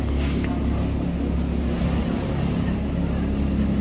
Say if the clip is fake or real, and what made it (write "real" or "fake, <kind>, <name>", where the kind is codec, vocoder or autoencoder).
real